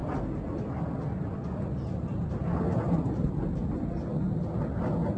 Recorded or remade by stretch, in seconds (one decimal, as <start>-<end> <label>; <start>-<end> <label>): 0.0-5.2 recorded